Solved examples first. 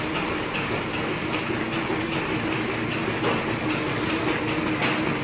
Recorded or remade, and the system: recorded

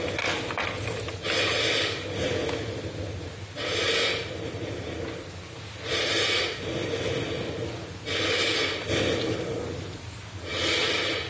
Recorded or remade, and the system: recorded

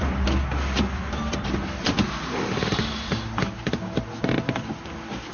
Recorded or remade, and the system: recorded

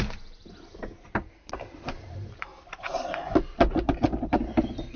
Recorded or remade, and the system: recorded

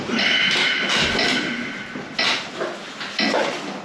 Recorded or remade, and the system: recorded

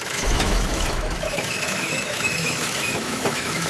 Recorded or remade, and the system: remade, autoencoder, DAC-VAE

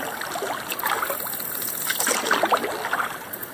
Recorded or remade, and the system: recorded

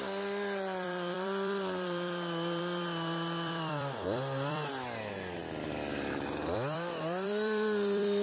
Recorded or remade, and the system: remade, vocoder, BigVGAN v2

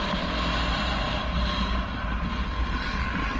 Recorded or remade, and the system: recorded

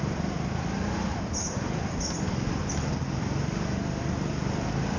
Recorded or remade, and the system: recorded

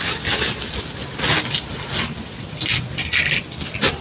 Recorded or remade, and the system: recorded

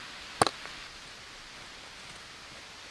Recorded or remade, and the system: recorded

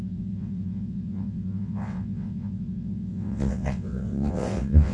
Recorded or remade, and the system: remade, vocoder, WaveNeXt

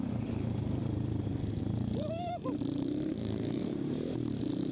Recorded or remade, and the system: remade, vocoder, BigVGAN v2